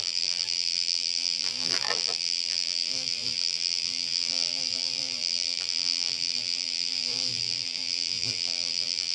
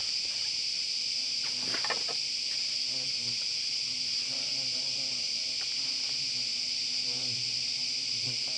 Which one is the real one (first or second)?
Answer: second